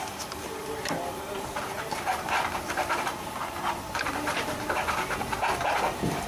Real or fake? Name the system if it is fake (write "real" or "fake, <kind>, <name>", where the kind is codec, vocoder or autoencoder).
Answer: fake, vocoder, BigVGAN v2